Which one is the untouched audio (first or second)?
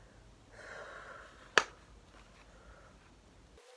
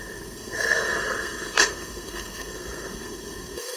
first